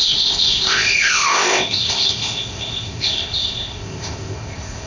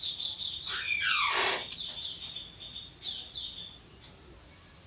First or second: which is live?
second